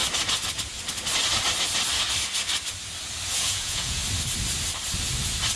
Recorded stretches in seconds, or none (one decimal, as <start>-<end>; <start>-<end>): 0.0-3.4; 4.0-5.6